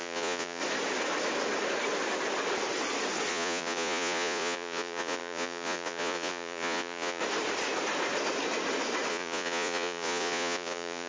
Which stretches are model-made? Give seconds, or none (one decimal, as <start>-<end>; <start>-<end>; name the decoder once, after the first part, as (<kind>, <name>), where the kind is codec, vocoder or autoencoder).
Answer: 0.0-0.6 (vocoder, Vocos); 3.3-7.2; 9.1-11.1